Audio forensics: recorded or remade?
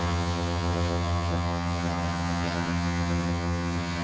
remade